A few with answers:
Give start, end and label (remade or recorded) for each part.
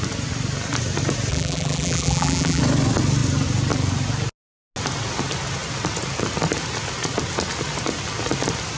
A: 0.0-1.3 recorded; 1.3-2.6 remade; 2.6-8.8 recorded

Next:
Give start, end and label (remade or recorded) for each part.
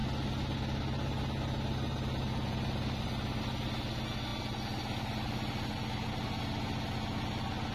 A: 0.0-7.7 recorded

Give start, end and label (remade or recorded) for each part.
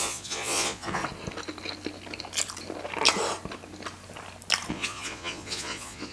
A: 0.0-1.0 remade; 1.0-4.7 recorded; 4.7-6.1 remade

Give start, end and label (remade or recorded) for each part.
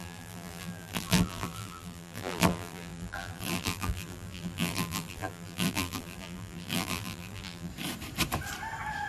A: 0.0-7.7 remade; 7.7-9.1 recorded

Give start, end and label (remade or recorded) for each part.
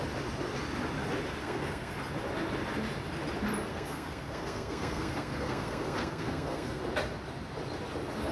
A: 0.0-1.4 recorded; 1.4-1.9 remade; 1.9-3.7 recorded; 3.7-6.8 remade; 6.8-8.3 recorded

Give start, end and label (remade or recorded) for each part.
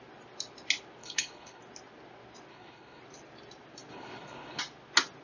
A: 0.0-1.0 recorded; 1.0-1.6 remade; 1.6-2.5 recorded; 2.5-3.0 remade; 3.0-3.9 recorded; 3.9-4.6 remade; 4.6-5.2 recorded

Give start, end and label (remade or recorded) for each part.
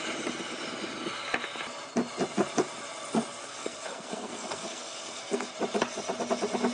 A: 0.0-3.4 recorded; 3.4-5.5 remade; 5.5-6.7 recorded